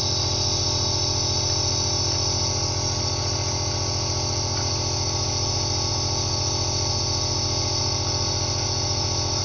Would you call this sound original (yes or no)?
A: yes